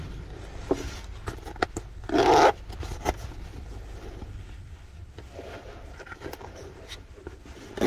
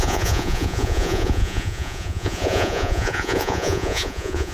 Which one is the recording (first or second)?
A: first